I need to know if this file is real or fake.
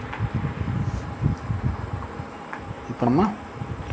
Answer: real